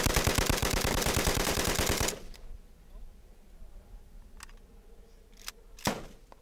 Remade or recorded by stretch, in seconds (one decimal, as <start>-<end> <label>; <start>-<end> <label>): 0.0-0.6 recorded; 0.6-4.4 remade; 4.4-6.4 recorded